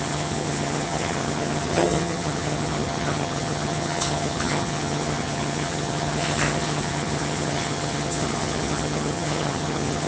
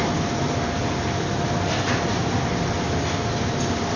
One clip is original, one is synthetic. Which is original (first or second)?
second